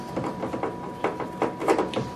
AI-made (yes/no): no